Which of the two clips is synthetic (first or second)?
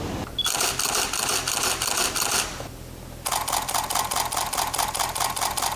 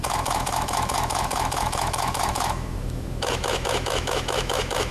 second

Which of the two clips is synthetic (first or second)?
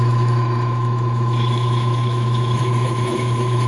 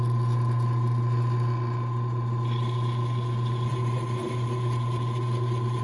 first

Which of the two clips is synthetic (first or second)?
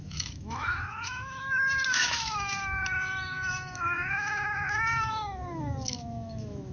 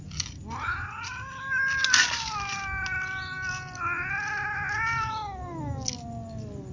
first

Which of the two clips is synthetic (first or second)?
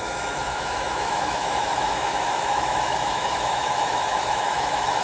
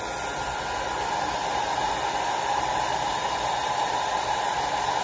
first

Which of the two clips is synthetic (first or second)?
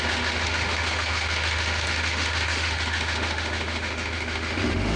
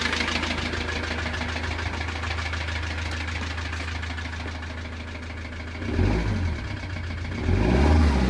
first